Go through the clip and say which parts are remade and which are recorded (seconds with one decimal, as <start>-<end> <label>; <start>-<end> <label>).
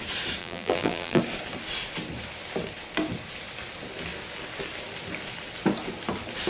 0.0-0.4 recorded; 0.4-1.2 remade; 1.2-6.5 recorded